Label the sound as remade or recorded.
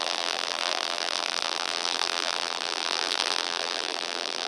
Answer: remade